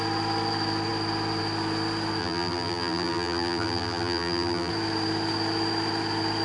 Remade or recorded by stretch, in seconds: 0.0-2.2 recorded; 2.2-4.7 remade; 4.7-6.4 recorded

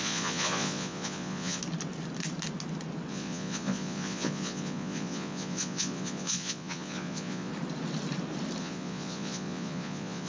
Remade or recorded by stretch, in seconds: 0.0-1.6 remade; 1.6-3.1 recorded; 3.1-7.5 remade; 7.5-8.6 recorded; 8.6-10.3 remade

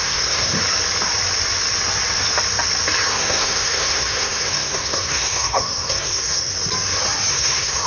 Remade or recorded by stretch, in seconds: 0.0-0.6 remade; 0.6-3.1 recorded; 3.1-6.5 remade; 6.5-7.3 recorded; 7.3-7.9 remade

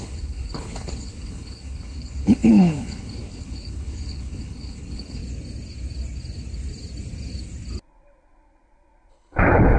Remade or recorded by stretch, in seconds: 0.0-5.2 remade; 5.2-9.1 recorded; 9.1-9.8 remade